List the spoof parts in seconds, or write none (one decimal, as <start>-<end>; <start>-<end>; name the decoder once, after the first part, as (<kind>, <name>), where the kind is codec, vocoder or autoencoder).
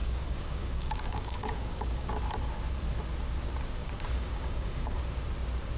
0.0-2.1 (codec, DAC); 3.8-5.0